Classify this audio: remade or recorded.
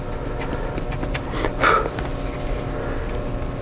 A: recorded